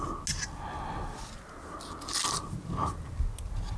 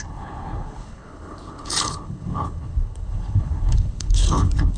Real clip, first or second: first